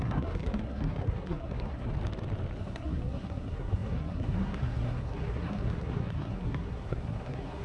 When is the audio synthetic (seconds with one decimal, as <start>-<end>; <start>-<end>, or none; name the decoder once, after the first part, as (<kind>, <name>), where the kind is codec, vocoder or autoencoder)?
0.0-1.9 (codec, SNAC); 2.6-7.6